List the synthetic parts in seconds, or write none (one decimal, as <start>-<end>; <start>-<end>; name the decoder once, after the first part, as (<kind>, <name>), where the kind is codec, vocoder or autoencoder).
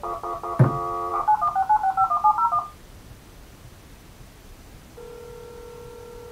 none